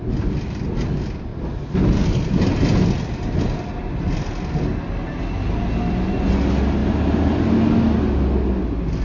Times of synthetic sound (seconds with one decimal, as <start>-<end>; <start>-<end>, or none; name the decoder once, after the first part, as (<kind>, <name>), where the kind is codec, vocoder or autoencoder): none